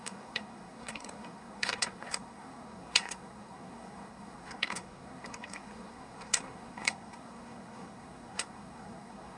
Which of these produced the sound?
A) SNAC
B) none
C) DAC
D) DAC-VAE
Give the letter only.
A